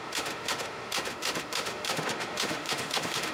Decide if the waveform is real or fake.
fake